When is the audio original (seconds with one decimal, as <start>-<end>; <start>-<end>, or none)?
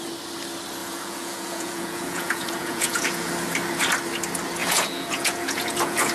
0.0-0.8; 3.3-4.6